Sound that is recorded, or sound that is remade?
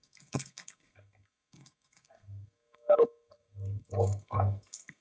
remade